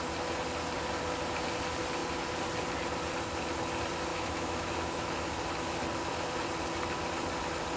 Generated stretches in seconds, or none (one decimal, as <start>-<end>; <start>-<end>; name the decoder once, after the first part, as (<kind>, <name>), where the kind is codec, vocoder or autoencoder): 4.1-5.0 (autoencoder, DAC-VAE)